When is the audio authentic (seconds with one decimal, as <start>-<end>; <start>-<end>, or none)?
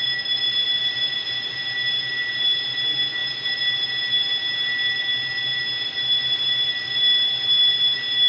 0.0-8.3